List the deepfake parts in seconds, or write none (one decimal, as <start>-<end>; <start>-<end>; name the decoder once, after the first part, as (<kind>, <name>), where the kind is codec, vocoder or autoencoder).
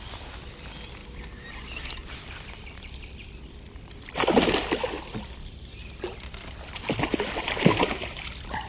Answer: 0.0-1.0 (vocoder, BigVGAN v2); 1.7-3.2; 6.8-8.7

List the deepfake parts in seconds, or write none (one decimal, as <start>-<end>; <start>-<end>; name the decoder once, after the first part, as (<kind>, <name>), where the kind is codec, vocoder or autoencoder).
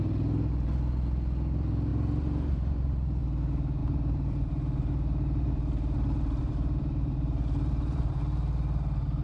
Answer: 1.9-3.2 (vocoder, BigVGAN v2); 3.8-8.2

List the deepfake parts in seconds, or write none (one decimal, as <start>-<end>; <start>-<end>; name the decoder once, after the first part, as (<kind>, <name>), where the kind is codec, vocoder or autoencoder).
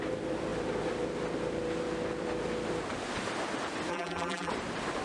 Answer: 3.9-4.5 (vocoder, BigVGAN v2)